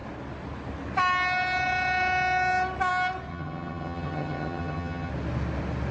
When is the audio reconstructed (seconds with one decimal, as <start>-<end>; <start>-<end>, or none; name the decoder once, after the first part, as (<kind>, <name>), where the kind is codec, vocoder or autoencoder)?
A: 3.3-5.1 (vocoder, HiFi-GAN)